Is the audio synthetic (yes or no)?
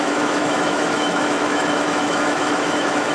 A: yes